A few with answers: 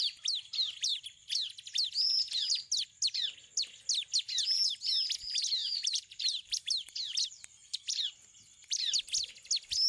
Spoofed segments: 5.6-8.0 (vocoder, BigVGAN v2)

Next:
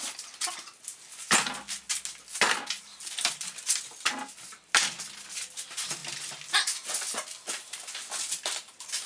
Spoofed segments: none

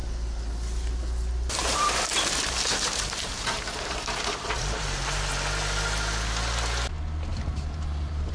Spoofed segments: 1.6-5.3 (vocoder, BigVGAN v2); 7.3-8.3

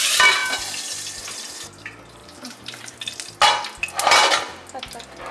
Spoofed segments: 2.2-2.8 (vocoder, BigVGAN v2)

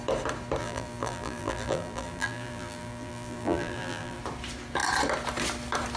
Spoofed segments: 0.6-4.2 (vocoder, BigVGAN v2)

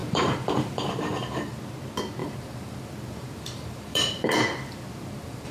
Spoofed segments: 0.0-1.6 (vocoder, BigVGAN v2); 2.2-5.5